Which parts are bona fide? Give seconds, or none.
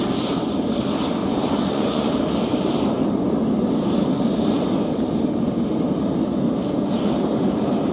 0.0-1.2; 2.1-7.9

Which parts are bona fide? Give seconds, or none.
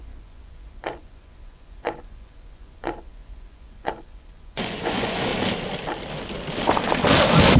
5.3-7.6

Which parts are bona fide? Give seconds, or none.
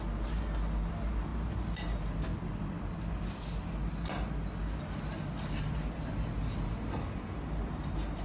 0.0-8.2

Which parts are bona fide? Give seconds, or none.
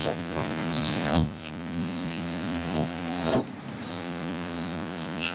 3.3-3.9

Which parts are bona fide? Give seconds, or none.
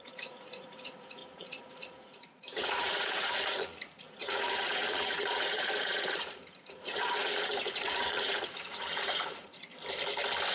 9.7-10.5